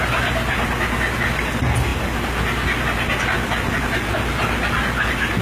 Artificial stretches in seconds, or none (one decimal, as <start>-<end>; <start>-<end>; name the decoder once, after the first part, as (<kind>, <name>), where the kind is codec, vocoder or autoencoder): none